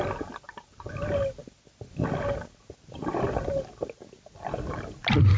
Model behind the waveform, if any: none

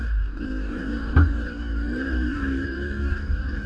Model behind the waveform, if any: codec, DAC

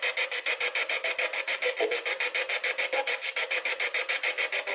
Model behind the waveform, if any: none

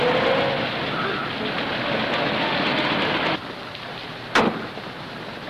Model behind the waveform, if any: none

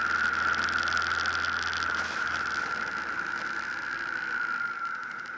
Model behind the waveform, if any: none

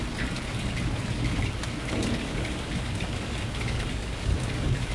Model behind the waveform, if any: codec, DAC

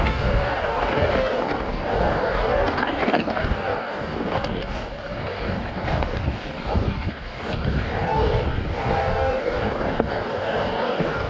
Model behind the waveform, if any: codec, DAC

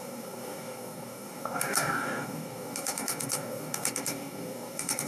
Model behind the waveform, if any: codec, DAC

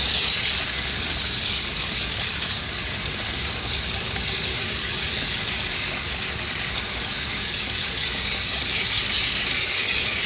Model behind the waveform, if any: codec, DAC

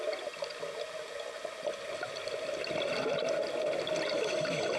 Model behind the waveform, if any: none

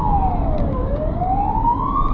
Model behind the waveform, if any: none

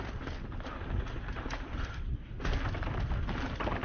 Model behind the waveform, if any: none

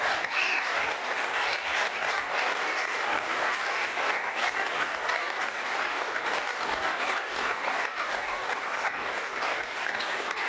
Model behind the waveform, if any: codec, DAC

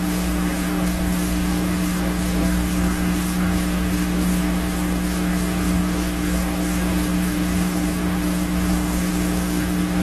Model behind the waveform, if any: codec, DAC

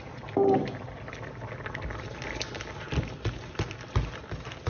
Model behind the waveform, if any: none